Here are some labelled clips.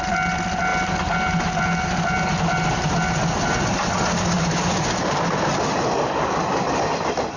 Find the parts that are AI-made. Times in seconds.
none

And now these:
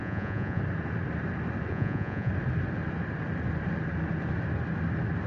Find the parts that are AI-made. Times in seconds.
0.0-0.6 (vocoder, Vocos); 1.7-2.3

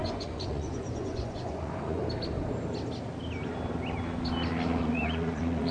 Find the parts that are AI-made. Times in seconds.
0.0-2.0 (vocoder, Vocos); 4.8-5.7

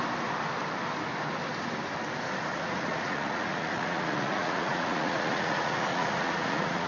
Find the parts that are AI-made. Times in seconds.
2.5-6.9 (vocoder, Vocos)

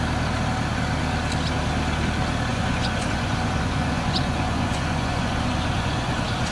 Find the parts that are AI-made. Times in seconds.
2.5-6.5 (vocoder, Vocos)

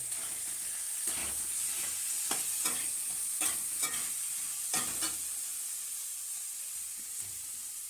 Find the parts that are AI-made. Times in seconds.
none

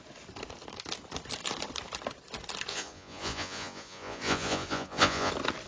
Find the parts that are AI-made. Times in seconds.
2.7-5.3 (vocoder, Vocos)

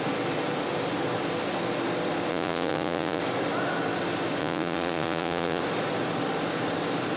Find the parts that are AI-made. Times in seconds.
2.3-3.2 (vocoder, Vocos); 4.4-5.6